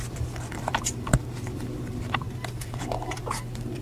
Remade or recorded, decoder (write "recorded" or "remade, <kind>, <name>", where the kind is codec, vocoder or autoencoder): remade, vocoder, BigVGAN v2